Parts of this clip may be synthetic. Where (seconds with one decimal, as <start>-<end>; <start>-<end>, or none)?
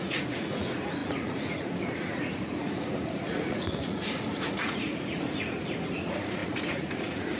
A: 0.0-7.4